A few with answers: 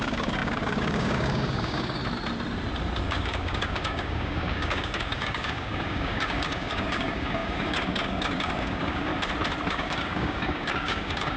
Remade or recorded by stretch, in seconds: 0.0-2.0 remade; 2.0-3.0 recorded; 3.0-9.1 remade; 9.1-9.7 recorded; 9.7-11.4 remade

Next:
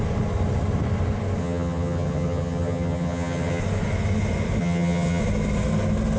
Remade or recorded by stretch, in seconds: 0.0-1.4 recorded; 1.4-3.6 remade; 3.6-4.6 recorded; 4.6-5.2 remade; 5.2-6.2 recorded

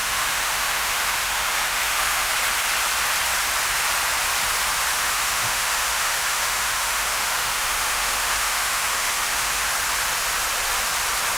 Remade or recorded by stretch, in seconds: 0.0-2.3 remade; 2.3-4.9 recorded; 4.9-9.7 remade; 9.7-11.4 recorded

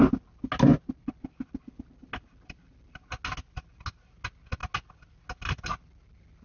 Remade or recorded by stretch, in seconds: 0.0-0.7 recorded; 0.7-1.7 remade; 1.7-6.4 recorded